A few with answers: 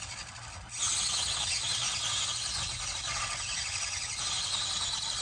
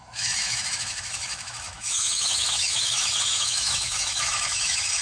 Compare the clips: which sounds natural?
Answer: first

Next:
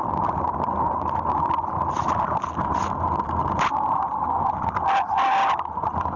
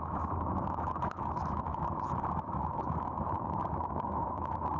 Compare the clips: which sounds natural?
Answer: first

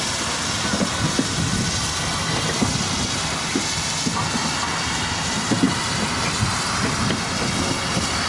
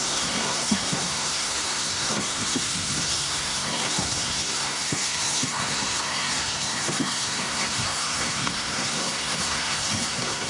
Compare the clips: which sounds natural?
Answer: first